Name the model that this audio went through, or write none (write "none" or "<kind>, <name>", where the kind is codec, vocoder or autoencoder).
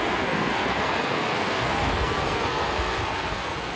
codec, SNAC